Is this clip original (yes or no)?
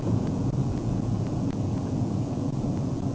no